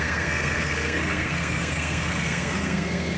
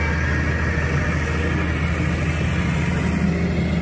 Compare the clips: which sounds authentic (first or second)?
second